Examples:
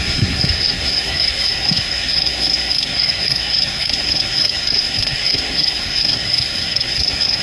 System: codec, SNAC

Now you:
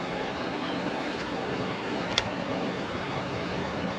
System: codec, SNAC